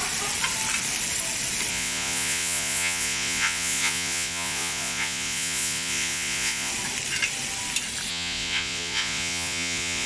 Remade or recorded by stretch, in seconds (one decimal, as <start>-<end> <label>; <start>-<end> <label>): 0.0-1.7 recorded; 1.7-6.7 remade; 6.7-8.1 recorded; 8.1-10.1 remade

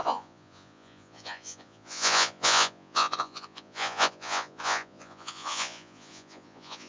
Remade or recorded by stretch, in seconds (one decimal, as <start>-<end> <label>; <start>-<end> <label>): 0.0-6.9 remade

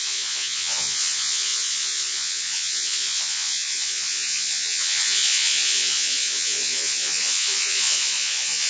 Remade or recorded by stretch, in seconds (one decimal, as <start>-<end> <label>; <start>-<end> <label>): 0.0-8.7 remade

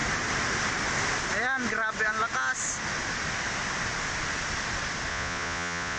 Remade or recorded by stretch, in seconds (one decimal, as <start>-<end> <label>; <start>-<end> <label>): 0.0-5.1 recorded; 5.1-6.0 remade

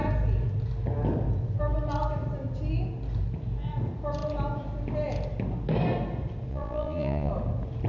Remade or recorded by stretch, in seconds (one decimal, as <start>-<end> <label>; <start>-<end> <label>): 0.0-6.5 recorded; 6.5-7.3 remade; 7.3-7.9 recorded

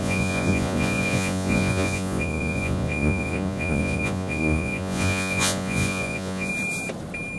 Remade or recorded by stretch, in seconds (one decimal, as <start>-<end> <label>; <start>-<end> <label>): 0.0-6.5 remade; 6.5-7.4 recorded